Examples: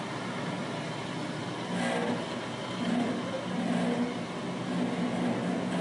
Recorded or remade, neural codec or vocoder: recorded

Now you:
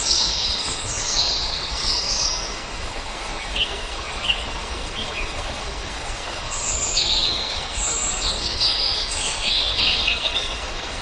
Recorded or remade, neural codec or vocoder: remade, codec, SNAC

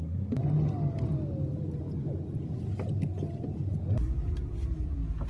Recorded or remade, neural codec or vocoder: recorded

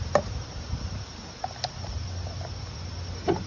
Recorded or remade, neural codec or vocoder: recorded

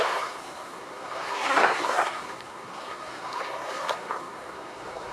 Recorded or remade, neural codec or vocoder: remade, codec, SNAC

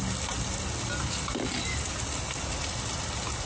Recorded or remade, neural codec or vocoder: recorded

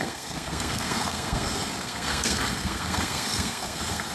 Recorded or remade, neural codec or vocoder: remade, codec, SNAC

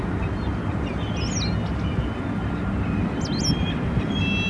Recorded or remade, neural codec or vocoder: recorded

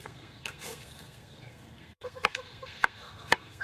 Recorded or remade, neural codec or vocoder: remade, codec, SNAC